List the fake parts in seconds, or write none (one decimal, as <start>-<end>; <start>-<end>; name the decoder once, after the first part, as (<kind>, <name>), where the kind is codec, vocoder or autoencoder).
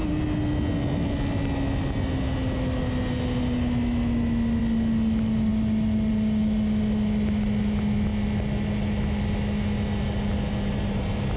none